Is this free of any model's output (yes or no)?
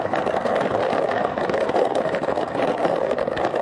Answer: no